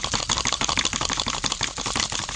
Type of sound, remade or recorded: recorded